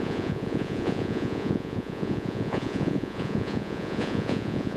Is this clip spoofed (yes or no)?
yes